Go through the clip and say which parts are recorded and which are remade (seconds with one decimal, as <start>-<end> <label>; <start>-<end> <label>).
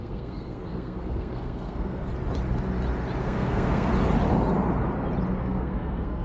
0.0-2.1 remade; 2.1-3.2 recorded; 3.2-3.9 remade; 3.9-5.4 recorded; 5.4-6.2 remade